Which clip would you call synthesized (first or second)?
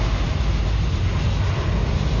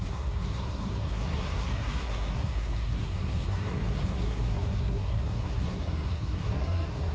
second